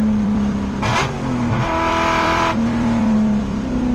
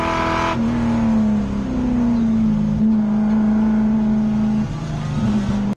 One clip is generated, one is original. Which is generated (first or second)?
first